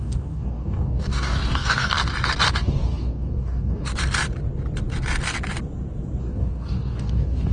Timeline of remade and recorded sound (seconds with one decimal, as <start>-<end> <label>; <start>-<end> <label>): 0.0-1.9 remade; 1.9-2.6 recorded; 2.6-3.9 remade; 3.9-6.2 recorded; 6.2-7.5 remade

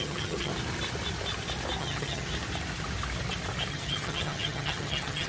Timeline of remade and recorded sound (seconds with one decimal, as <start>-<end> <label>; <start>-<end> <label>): 0.0-0.5 remade; 0.5-1.8 recorded; 1.8-2.3 remade; 2.3-3.7 recorded; 3.7-5.3 remade